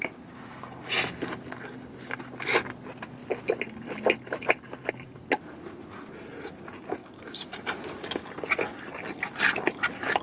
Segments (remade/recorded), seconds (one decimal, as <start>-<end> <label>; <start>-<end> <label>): 0.0-7.0 recorded; 7.0-7.5 remade; 7.5-10.2 recorded